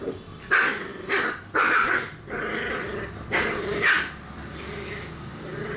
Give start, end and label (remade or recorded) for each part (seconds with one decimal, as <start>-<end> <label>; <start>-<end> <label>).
0.0-5.8 recorded